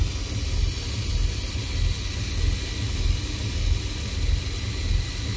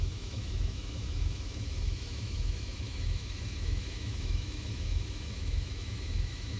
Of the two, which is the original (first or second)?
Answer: first